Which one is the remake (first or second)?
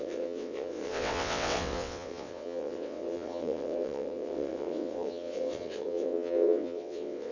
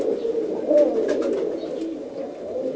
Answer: first